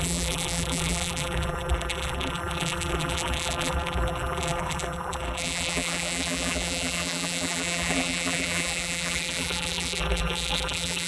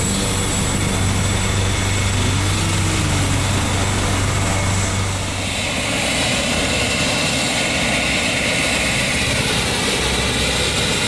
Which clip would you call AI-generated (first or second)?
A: first